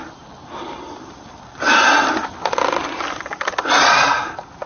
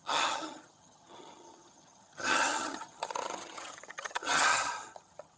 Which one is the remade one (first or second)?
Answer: second